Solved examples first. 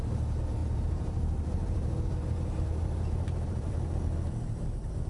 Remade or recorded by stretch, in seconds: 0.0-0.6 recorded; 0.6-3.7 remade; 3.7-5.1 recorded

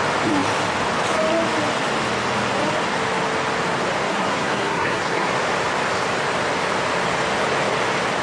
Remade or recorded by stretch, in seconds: 0.0-4.1 recorded; 4.1-5.3 remade; 5.3-8.2 recorded

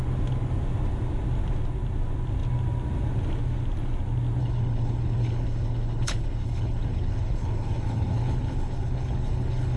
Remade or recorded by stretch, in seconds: 0.0-4.4 recorded; 4.4-9.8 remade

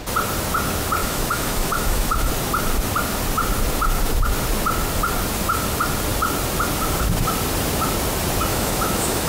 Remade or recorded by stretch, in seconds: 0.0-1.0 recorded; 1.0-2.3 remade; 2.3-8.5 recorded; 8.5-9.3 remade

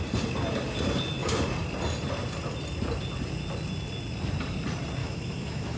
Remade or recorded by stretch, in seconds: 0.0-5.0 recorded; 5.0-5.8 remade

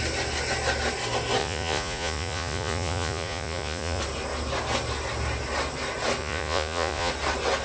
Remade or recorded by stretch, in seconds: 0.0-1.4 recorded; 1.4-4.0 remade; 4.0-6.2 recorded; 6.2-7.1 remade; 7.1-7.6 recorded